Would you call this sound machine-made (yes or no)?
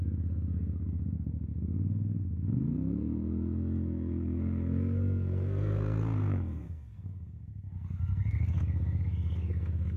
yes